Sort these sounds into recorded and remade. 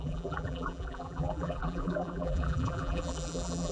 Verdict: remade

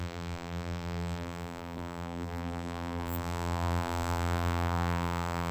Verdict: remade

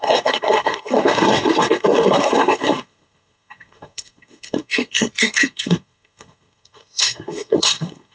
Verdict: remade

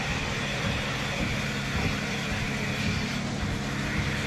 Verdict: recorded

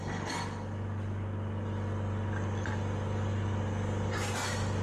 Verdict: recorded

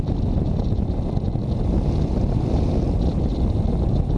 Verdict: recorded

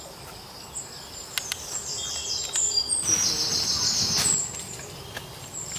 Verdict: recorded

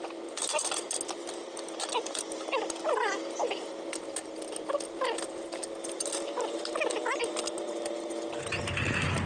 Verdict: recorded